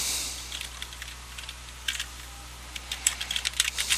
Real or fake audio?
fake